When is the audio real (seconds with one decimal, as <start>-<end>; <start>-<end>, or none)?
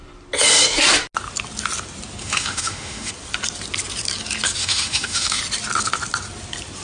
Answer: 0.0-2.2; 3.1-4.6; 5.4-6.8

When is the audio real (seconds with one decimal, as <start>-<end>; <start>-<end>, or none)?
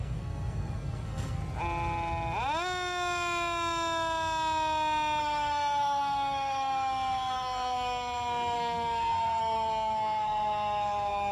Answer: 1.4-5.2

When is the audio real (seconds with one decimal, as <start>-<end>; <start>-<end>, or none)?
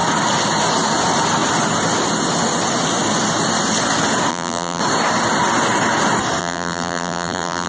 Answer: 0.0-4.3; 4.8-6.4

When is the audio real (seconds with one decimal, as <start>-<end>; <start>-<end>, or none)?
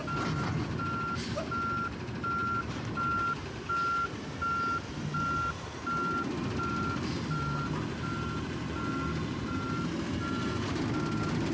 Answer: 0.0-11.5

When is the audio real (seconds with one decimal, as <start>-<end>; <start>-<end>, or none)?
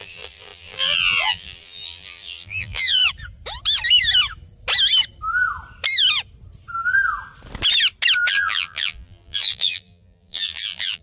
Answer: 3.0-8.3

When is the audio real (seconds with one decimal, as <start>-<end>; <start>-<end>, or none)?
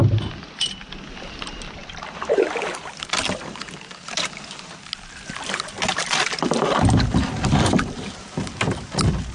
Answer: 0.0-1.8; 3.7-6.0; 8.5-9.3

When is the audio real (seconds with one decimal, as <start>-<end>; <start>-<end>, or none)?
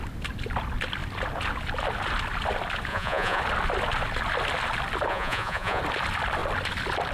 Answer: 0.0-2.9; 3.4-5.1; 5.8-7.1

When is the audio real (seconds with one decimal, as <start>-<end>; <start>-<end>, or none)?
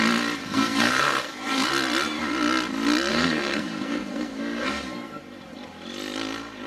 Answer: 0.0-0.4; 1.7-3.1; 5.2-6.7